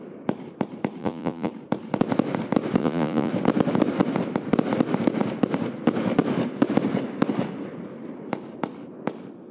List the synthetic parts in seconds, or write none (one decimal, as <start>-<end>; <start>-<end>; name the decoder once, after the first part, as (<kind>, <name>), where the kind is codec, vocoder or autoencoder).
1.0-1.5 (vocoder, Vocos); 2.8-3.3